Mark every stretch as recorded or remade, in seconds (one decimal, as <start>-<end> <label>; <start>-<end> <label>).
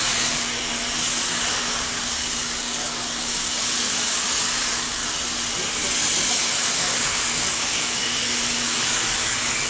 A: 0.0-5.0 remade; 5.0-6.3 recorded; 6.3-9.7 remade